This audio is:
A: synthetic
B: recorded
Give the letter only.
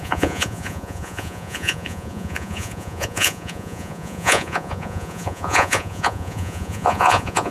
A